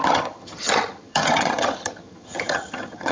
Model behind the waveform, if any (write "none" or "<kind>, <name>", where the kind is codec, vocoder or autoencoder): vocoder, HiFi-GAN